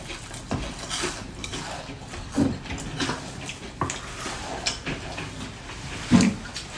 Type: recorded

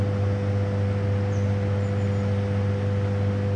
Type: recorded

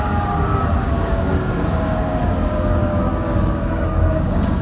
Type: remade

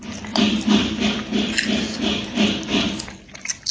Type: recorded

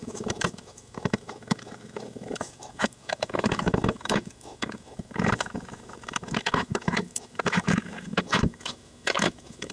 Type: remade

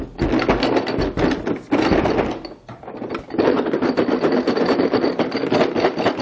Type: recorded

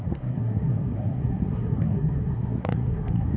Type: remade